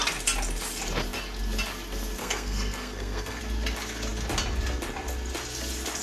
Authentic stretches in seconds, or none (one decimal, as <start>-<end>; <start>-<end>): 0.0-2.2; 3.4-6.0